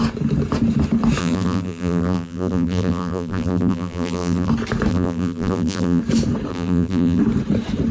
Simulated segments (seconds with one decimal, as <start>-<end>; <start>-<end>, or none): 1.2-4.5; 4.9-6.0; 6.5-7.2